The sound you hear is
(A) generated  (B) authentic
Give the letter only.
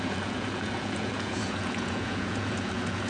A